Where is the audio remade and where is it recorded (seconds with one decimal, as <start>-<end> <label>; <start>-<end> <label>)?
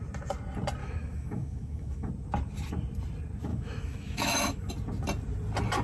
0.0-0.8 recorded; 0.8-2.1 remade; 2.1-3.5 recorded; 3.5-4.7 remade; 4.7-5.8 recorded